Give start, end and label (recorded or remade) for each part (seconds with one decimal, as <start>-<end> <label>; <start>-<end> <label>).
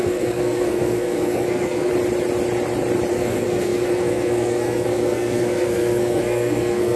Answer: 0.0-1.9 remade; 1.9-3.1 recorded; 3.1-7.0 remade